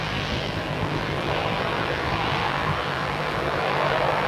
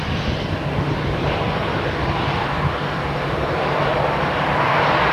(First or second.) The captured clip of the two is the second